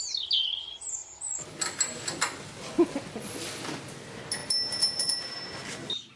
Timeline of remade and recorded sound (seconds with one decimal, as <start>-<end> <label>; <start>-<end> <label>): 0.0-6.2 recorded